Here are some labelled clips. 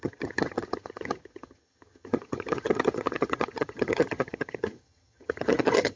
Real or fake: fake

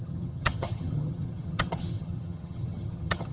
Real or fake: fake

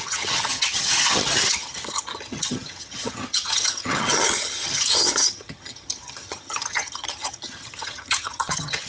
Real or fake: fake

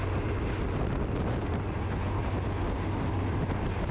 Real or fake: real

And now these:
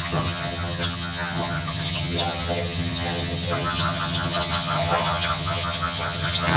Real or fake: fake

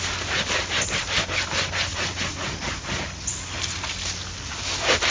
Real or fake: real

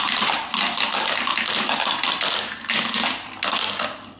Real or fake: real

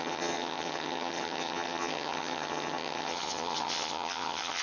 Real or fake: fake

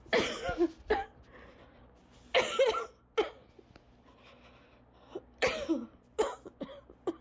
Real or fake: real